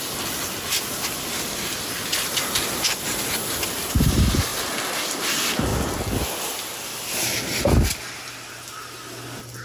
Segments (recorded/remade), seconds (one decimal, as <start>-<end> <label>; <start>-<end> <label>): 0.0-9.6 recorded